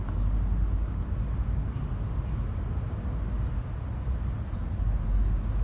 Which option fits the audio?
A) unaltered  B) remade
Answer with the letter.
A